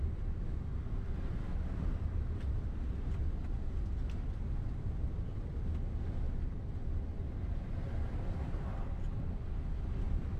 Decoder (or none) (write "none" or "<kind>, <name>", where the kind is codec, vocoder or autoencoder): none